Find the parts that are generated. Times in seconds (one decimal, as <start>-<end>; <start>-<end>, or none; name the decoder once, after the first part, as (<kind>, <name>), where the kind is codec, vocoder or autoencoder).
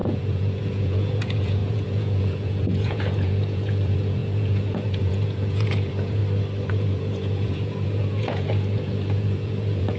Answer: 0.0-6.2 (vocoder, Vocos); 6.7-10.0